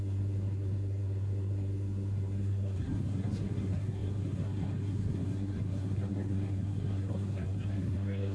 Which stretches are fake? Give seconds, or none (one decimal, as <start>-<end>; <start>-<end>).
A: 0.0-8.3